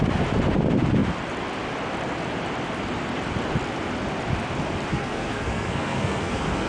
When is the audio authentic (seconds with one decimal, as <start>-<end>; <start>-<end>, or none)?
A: 0.0-4.9